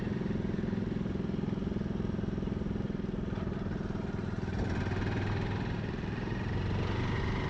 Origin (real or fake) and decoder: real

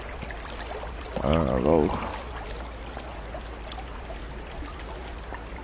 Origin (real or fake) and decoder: real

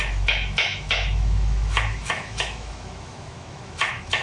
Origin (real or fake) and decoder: fake, autoencoder, DAC-VAE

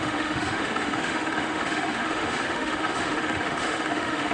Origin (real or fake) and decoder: fake, autoencoder, DAC-VAE